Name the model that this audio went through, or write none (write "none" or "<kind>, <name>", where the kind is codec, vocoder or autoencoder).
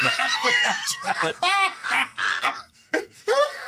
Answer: codec, SNAC